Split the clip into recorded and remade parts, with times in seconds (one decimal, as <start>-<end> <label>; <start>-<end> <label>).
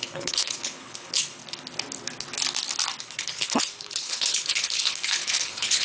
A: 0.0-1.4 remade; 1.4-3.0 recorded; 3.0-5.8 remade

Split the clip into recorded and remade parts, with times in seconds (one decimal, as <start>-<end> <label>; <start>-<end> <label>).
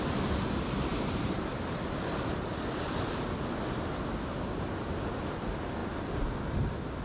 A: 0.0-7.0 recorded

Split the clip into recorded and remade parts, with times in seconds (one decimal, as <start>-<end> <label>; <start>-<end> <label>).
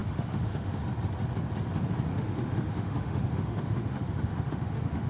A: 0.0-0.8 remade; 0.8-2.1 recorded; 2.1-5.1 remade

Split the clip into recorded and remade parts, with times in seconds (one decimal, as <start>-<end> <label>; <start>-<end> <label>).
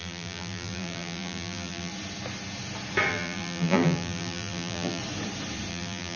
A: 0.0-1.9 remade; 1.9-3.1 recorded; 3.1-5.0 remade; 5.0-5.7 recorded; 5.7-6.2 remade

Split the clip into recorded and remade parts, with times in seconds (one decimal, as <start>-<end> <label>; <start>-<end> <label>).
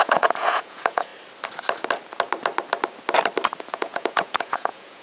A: 0.0-1.1 remade; 1.1-3.6 recorded; 3.6-5.0 remade